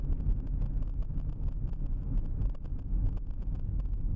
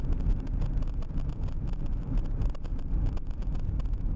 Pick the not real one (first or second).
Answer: second